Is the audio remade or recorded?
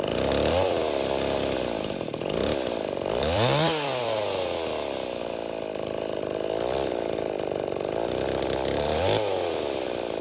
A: remade